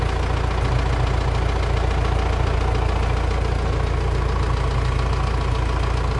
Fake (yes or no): no